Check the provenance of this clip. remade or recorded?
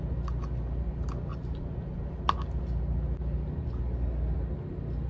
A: recorded